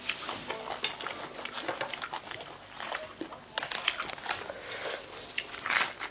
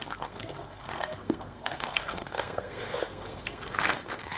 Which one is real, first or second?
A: first